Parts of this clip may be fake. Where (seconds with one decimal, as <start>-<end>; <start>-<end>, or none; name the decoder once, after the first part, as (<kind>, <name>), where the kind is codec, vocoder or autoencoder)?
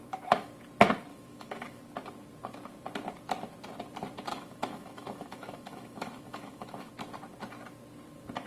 1.1-1.8 (autoencoder, DAC-VAE); 4.3-6.9